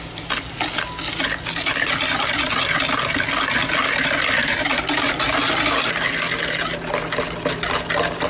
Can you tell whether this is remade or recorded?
recorded